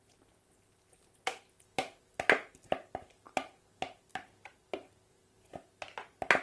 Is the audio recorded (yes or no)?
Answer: yes